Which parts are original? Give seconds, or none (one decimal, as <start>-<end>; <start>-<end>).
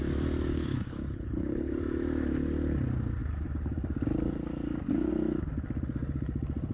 0.0-0.5; 1.7-6.7